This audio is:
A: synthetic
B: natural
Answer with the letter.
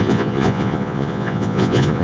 A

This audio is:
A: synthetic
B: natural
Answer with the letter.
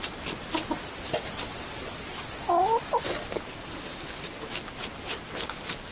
B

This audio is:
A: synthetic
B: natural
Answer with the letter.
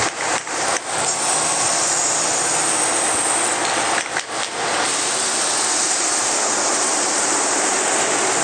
B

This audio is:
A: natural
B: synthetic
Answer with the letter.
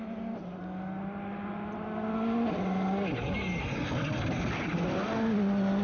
A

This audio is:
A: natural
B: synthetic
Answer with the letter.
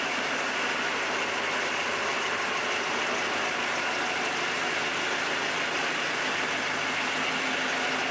A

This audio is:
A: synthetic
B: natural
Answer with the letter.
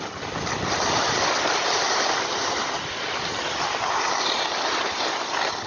B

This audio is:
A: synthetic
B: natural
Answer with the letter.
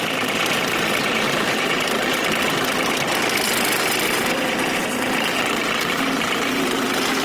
B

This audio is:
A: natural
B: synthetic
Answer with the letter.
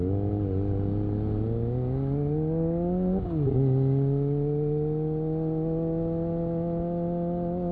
A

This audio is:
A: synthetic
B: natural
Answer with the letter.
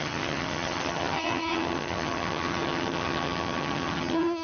A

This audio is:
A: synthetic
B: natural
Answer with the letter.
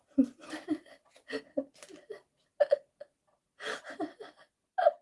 B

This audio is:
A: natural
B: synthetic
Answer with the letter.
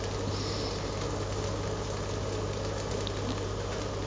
A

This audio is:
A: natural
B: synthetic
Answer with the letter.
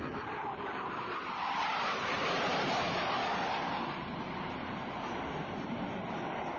A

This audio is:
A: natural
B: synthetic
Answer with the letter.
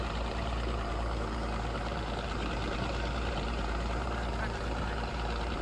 B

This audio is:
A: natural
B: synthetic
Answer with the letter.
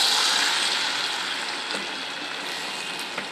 A